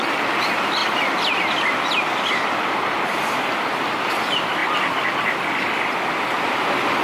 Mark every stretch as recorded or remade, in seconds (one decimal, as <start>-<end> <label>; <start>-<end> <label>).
0.0-7.0 recorded